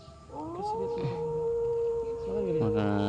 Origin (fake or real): real